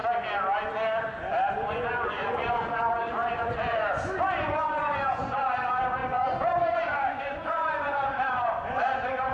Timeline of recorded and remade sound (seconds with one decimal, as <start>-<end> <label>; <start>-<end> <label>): 0.0-1.5 recorded; 1.5-9.3 remade